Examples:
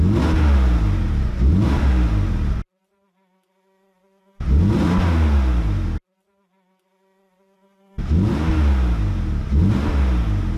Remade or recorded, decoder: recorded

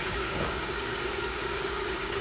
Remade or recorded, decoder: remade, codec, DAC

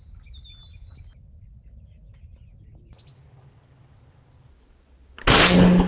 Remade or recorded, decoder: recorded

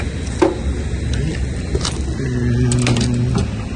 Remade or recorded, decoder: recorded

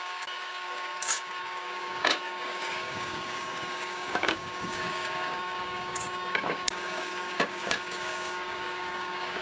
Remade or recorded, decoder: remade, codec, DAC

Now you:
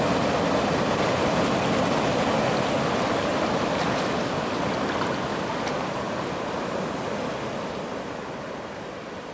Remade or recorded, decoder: recorded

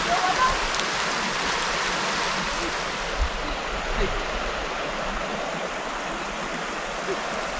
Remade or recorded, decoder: recorded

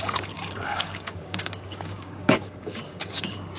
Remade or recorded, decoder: remade, codec, DAC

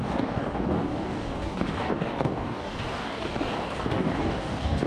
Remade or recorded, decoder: remade, codec, DAC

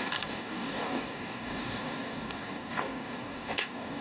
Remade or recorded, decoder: remade, codec, DAC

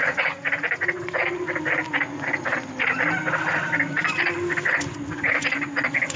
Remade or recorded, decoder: recorded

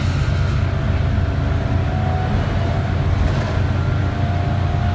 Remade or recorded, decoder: recorded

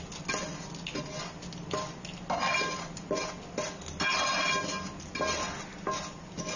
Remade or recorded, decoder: recorded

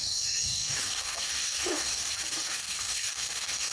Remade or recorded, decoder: remade, codec, DAC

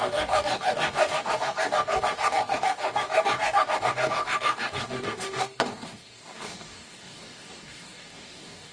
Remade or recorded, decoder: remade, codec, DAC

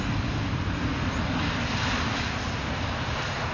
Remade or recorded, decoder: recorded